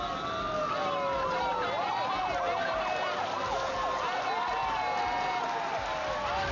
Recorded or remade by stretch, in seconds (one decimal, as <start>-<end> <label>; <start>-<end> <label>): 0.0-6.5 recorded